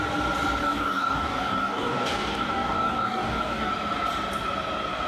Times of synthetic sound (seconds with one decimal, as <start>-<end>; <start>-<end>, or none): 0.6-3.7